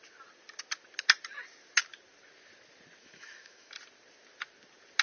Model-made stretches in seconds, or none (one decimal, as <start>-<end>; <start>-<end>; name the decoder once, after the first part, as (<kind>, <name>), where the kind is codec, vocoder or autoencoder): 3.0-3.7 (autoencoder, DAC-VAE)